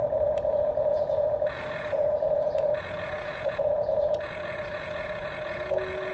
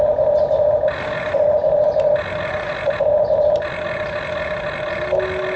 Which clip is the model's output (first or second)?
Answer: first